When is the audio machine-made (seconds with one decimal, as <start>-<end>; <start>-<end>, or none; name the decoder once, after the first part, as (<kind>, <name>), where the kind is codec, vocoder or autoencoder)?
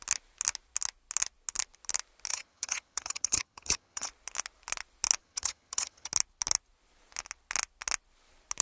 2.3-4.1 (vocoder, HiFi-GAN); 5.2-6.1